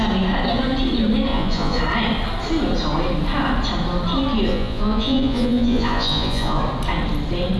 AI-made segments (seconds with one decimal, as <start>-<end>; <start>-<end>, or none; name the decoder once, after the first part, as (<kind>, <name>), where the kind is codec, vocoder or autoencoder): 1.3-1.8 (vocoder, Vocos); 4.5-6.6